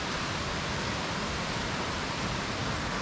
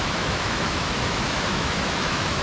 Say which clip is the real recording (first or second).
first